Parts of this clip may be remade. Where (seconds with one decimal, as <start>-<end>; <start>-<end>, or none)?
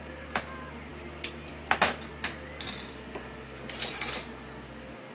none